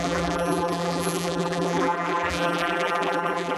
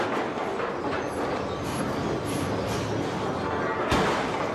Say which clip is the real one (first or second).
second